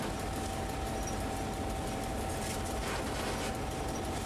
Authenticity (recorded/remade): recorded